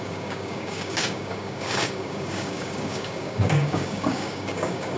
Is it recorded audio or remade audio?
remade